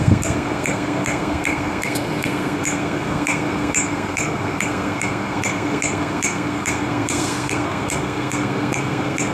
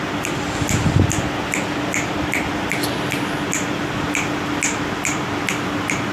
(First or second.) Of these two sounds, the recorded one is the second